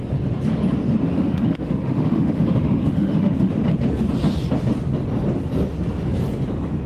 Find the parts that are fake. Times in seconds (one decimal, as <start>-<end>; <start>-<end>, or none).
1.1-3.5